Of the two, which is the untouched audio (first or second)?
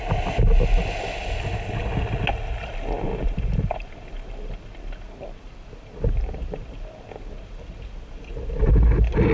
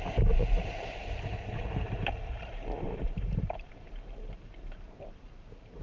first